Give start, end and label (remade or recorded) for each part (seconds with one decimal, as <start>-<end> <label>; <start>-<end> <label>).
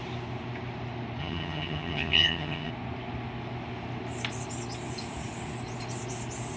0.0-1.2 recorded; 1.2-2.7 remade; 2.7-6.6 recorded